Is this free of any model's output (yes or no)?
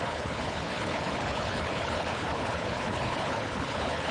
no